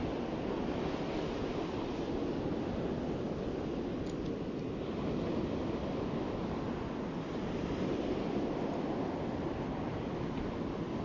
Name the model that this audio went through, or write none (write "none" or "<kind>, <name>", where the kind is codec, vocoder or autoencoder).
none